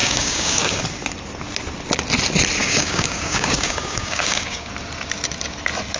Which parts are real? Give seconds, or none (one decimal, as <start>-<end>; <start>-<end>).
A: 0.8-2.6; 4.7-6.0